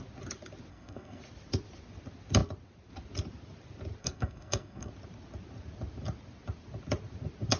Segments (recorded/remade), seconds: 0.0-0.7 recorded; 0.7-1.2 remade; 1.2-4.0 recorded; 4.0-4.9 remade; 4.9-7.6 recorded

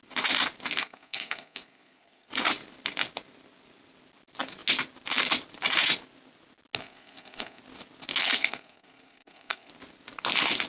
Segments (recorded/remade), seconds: 0.0-0.8 recorded; 0.8-2.3 remade; 2.3-6.8 recorded; 6.8-7.6 remade; 7.6-8.2 recorded; 8.2-9.7 remade; 9.7-10.7 recorded

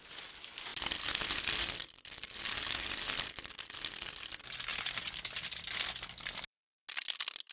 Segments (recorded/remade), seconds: 0.0-7.5 recorded